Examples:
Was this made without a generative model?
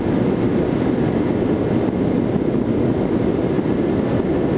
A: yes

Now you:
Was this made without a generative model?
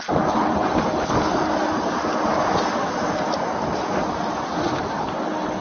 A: yes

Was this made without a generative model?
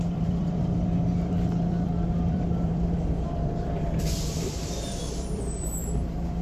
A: no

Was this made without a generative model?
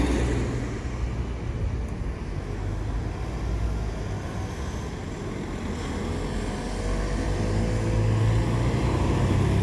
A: yes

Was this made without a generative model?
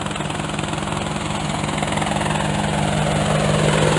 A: yes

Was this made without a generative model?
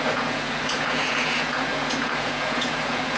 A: no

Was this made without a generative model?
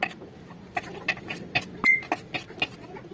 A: yes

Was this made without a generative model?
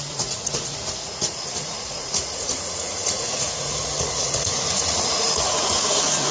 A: no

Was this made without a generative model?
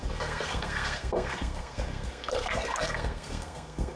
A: no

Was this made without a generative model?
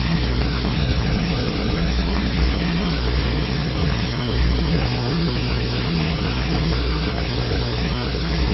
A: no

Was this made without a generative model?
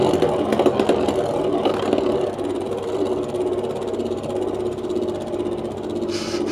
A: yes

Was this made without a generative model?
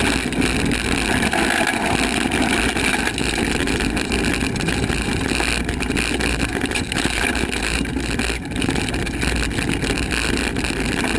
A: yes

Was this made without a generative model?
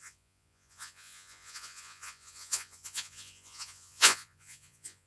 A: no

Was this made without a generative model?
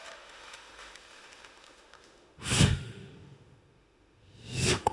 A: no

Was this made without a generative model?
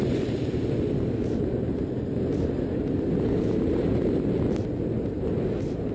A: yes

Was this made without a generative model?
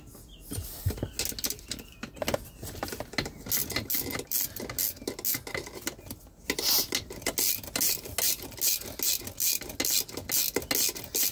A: yes